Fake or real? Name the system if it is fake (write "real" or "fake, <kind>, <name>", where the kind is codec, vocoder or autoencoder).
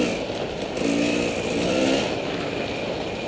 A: real